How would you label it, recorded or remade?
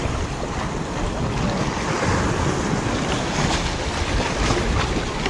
recorded